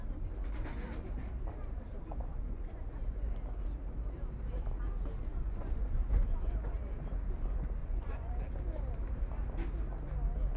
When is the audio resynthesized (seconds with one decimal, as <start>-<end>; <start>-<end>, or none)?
2.3-3.3; 5.3-6.7; 7.8-8.3